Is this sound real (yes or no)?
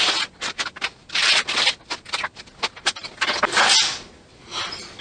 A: yes